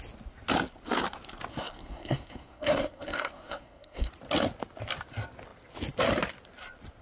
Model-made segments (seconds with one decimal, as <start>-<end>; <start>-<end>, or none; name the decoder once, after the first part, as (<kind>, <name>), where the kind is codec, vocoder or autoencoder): 1.5-4.1 (codec, SNAC)